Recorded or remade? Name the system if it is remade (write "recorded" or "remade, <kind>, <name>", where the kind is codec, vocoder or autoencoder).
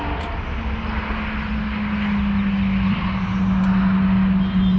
recorded